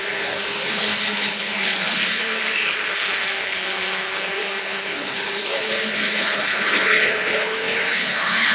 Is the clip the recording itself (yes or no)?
no